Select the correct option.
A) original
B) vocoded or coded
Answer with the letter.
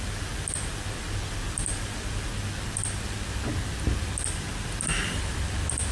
A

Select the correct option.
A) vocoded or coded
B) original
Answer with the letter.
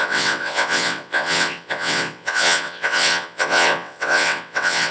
A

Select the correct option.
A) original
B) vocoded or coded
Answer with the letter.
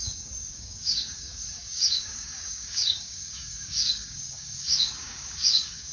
B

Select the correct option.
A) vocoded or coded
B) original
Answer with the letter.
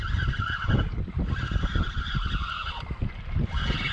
B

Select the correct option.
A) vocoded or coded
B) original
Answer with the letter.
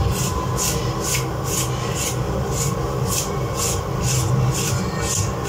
B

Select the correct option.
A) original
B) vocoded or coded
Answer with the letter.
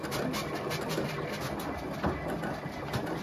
A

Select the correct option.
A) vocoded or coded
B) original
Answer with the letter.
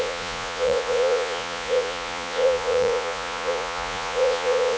A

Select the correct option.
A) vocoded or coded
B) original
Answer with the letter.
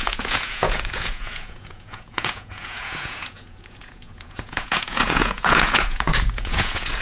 A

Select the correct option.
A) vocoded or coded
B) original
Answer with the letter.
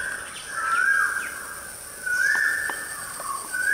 B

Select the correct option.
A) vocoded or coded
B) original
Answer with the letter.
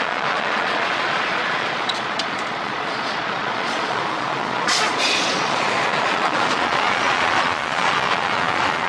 A